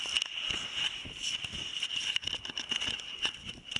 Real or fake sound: real